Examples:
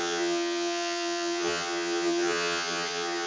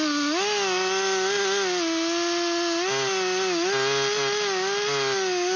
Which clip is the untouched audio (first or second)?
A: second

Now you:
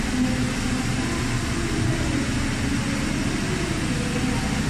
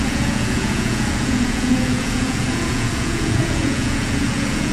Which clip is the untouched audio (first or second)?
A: first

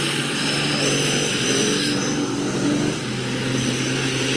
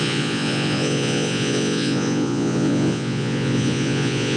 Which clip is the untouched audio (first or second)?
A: first